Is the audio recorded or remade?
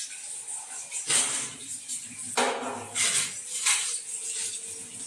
recorded